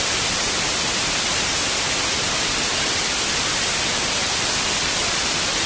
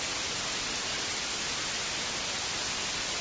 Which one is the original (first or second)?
second